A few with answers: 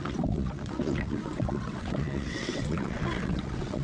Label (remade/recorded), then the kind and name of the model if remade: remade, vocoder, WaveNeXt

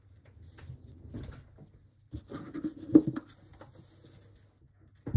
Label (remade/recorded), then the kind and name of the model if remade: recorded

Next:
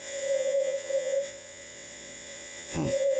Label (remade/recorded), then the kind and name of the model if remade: remade, vocoder, WaveNeXt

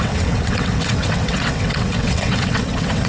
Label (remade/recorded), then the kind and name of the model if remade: remade, vocoder, WaveNeXt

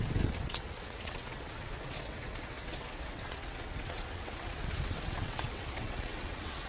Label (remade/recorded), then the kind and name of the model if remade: remade, vocoder, WaveNeXt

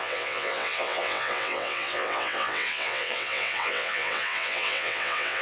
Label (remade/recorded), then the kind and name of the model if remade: remade, vocoder, WaveNeXt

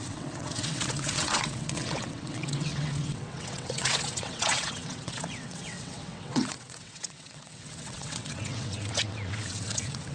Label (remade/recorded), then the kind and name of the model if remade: remade, vocoder, WaveNeXt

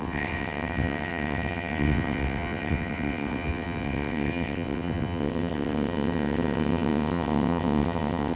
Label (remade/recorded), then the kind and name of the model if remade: remade, vocoder, WaveNeXt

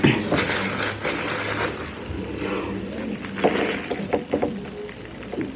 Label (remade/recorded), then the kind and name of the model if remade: recorded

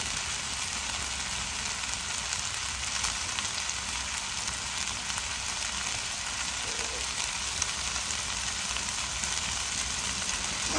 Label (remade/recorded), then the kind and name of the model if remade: recorded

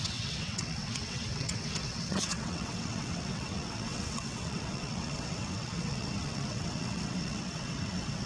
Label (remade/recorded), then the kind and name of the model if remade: remade, vocoder, WaveNeXt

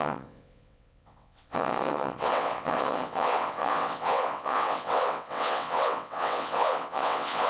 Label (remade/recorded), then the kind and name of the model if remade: remade, vocoder, WaveNeXt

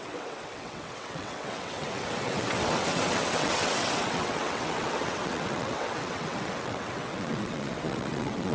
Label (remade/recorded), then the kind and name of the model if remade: remade, vocoder, WaveNeXt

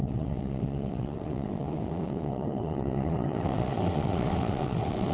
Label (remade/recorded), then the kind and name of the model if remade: remade, vocoder, WaveNeXt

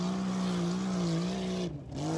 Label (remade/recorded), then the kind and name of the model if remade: recorded